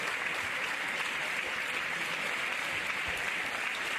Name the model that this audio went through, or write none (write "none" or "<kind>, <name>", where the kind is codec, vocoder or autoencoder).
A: vocoder, BigVGAN v2